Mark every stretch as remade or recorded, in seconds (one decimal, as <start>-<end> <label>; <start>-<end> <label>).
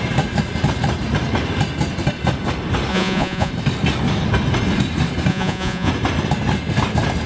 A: 0.0-2.9 recorded; 2.9-3.5 remade; 3.5-5.3 recorded; 5.3-5.9 remade; 5.9-7.3 recorded